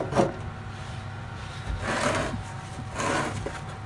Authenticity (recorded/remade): recorded